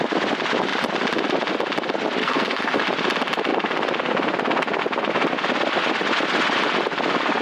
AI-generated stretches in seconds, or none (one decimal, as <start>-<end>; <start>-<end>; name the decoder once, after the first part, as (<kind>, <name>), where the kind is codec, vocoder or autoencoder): 2.2-2.8 (codec, SNAC)

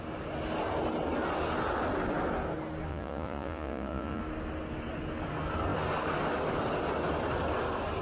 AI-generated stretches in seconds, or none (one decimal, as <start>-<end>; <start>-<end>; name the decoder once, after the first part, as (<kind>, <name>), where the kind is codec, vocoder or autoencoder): 2.9-4.2 (vocoder, Vocos)

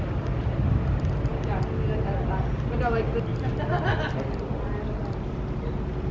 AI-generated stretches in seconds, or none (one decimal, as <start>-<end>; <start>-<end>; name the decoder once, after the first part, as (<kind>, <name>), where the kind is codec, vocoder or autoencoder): none